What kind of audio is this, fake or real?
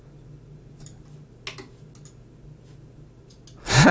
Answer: real